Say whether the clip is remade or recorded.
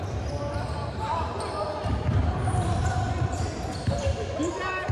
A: remade